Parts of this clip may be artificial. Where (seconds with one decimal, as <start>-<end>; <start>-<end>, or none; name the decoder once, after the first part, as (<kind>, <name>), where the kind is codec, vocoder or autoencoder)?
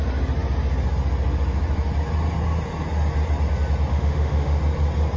3.9-4.6 (autoencoder, DAC-VAE)